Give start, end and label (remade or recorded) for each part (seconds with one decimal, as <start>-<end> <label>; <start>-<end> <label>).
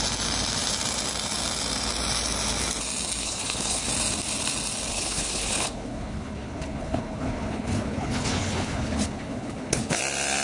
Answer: 0.0-3.2 recorded; 3.2-3.9 remade; 3.9-4.9 recorded; 4.9-10.0 remade; 10.0-10.4 recorded